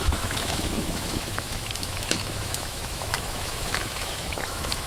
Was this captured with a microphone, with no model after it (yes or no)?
no